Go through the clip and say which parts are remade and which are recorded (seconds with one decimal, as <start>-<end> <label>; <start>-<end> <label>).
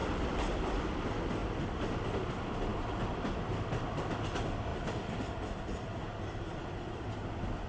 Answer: 0.0-0.8 remade; 0.8-2.7 recorded; 2.7-3.5 remade; 3.5-4.7 recorded; 4.7-7.1 remade; 7.1-7.7 recorded